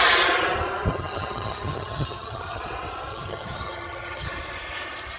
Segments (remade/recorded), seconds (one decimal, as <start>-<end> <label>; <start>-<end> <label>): 0.0-0.9 recorded; 0.9-2.6 remade; 2.6-3.1 recorded; 3.1-4.3 remade; 4.3-5.2 recorded